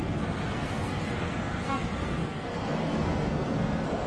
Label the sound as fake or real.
fake